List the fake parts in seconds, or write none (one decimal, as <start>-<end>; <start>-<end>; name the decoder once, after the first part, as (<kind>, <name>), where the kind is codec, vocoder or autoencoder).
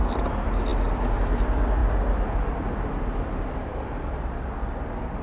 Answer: none